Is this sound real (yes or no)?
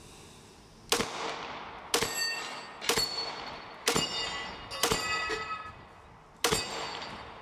yes